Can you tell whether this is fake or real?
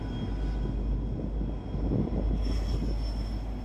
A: real